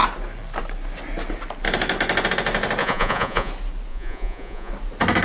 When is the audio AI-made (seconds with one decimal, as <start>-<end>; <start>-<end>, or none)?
2.8-3.5; 3.9-4.7

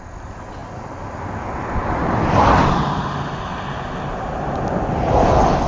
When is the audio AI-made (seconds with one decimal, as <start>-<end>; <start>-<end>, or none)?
none

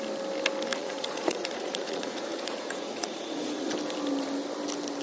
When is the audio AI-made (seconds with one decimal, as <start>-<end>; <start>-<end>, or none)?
0.7-3.7

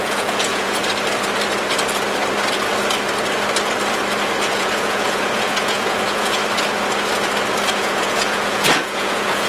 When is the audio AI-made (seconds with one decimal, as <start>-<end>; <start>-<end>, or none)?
0.0-0.8; 4.5-6.4; 7.7-9.5

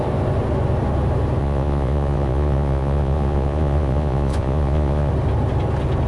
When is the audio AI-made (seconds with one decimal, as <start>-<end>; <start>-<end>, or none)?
1.4-5.1

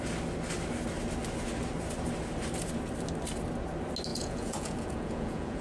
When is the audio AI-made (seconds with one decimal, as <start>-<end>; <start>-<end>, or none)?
4.1-5.6

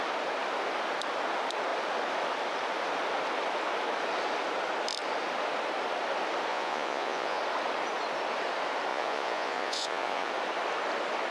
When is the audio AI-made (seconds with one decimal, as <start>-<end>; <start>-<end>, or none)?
6.5-7.4; 8.9-10.3